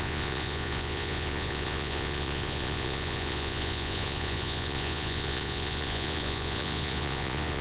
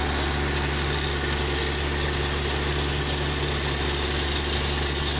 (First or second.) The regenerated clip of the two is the first